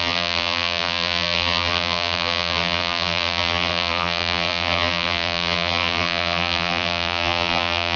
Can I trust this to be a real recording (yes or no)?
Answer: no